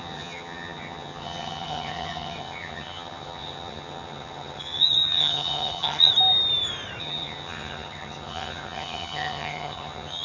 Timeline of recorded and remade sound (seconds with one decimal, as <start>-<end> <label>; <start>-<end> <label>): 0.0-6.1 remade; 6.1-7.0 recorded; 7.0-10.2 remade

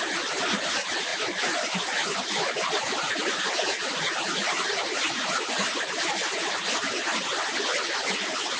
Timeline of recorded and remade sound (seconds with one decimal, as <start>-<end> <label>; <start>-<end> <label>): 0.0-8.6 recorded

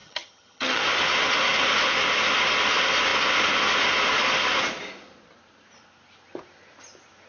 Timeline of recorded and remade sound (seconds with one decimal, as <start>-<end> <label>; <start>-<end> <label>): 0.0-0.8 remade; 0.8-7.3 recorded

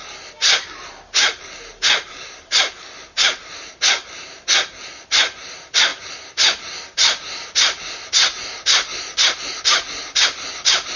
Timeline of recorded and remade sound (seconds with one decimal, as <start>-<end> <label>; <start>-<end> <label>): 0.0-11.0 recorded

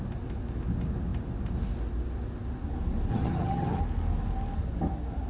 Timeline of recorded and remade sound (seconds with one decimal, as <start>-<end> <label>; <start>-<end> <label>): 0.0-3.1 recorded; 3.1-3.8 remade; 3.8-5.3 recorded

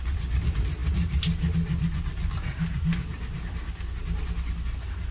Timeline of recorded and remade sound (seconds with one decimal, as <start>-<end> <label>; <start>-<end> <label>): 0.0-5.1 recorded